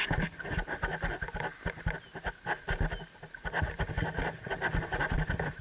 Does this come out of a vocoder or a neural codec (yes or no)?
no